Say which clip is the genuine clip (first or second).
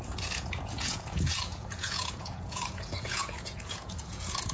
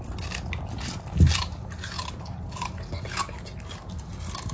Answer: second